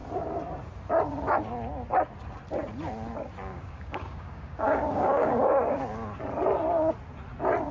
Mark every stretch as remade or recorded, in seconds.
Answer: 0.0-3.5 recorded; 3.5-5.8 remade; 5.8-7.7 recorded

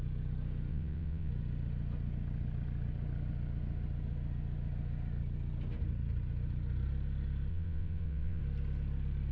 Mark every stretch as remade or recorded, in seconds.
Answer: 0.0-0.7 recorded; 0.7-1.3 remade; 1.3-7.5 recorded; 7.5-8.4 remade; 8.4-9.3 recorded